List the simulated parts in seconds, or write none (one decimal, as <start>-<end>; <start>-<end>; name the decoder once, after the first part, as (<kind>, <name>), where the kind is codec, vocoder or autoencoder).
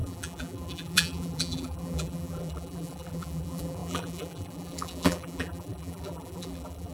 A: 0.0-6.9 (vocoder, BigVGAN v2)